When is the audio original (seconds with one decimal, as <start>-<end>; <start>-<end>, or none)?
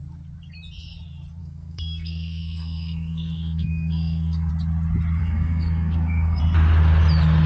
0.0-1.4; 4.5-5.2; 6.4-7.5